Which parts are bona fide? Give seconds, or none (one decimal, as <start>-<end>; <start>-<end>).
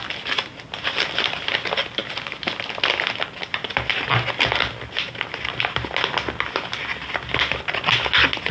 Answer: 0.0-8.5